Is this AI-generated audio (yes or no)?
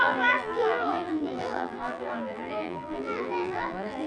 yes